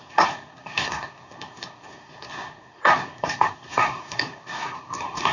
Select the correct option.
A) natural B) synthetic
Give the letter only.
B